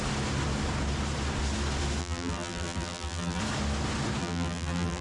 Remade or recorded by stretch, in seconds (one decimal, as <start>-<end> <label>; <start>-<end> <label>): 0.0-2.0 recorded; 2.0-3.4 remade; 3.4-4.2 recorded; 4.2-5.0 remade